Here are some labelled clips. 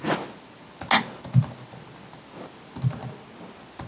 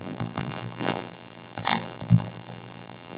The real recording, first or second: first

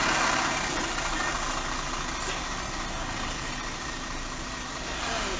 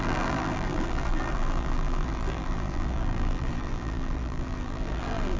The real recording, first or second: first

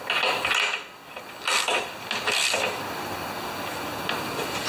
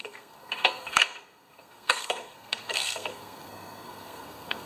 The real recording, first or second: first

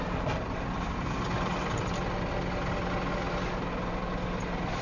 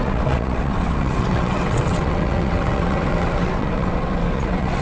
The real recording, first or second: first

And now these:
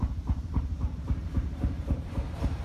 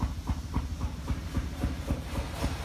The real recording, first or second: second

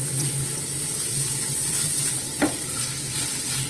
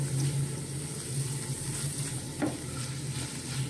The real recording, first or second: second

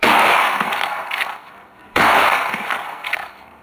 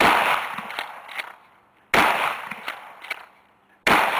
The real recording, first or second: second